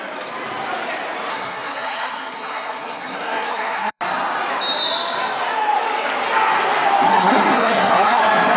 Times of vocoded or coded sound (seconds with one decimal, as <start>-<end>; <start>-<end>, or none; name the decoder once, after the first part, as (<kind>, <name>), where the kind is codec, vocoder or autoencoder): 1.3-4.0 (codec, SNAC); 7.1-8.2

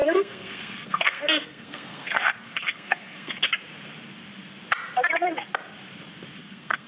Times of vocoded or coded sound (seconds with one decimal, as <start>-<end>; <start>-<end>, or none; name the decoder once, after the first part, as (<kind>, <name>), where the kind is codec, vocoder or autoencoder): 0.0-3.3 (codec, SNAC); 6.4-6.9

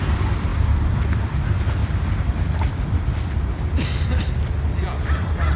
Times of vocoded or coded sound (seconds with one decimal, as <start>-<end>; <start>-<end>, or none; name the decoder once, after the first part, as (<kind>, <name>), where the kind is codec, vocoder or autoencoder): none

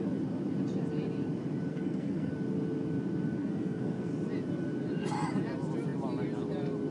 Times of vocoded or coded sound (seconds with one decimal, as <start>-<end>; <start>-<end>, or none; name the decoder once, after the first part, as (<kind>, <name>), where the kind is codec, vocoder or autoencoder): 1.7-2.3 (codec, SNAC); 3.4-4.1

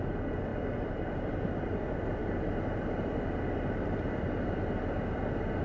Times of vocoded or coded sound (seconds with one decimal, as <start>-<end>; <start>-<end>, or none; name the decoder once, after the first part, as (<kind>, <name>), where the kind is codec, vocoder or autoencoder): none

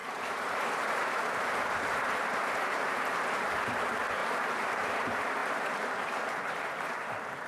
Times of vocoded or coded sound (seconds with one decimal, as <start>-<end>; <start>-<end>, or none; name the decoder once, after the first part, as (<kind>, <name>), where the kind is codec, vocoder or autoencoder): 0.0-7.5 (vocoder, BigVGAN v2)

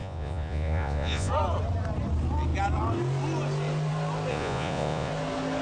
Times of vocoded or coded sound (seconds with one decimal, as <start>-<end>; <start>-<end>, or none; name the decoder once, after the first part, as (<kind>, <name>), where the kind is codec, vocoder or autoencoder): 0.0-1.3 (vocoder, Vocos); 4.3-5.1